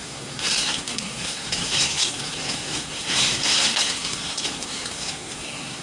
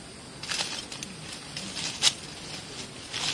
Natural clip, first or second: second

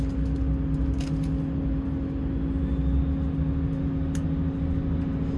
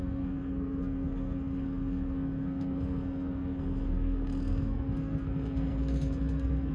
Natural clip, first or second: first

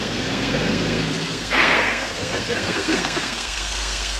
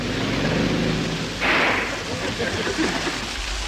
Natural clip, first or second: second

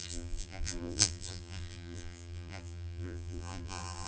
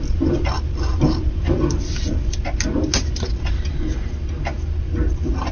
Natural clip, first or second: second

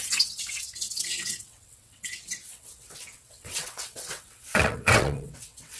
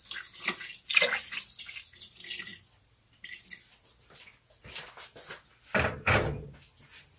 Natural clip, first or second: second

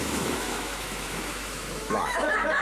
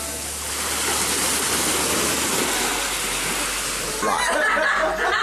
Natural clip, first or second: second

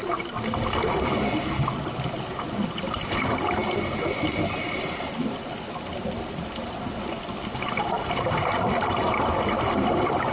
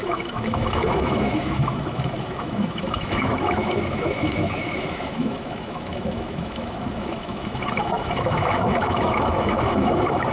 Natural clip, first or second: first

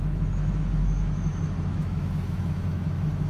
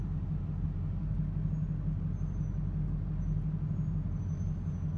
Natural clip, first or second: second